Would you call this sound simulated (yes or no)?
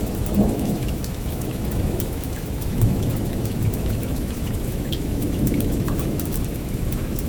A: yes